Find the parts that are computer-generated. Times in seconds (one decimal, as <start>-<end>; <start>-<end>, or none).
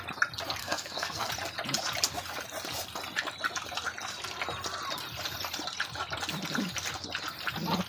0.6-1.3